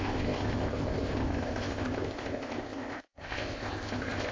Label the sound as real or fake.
fake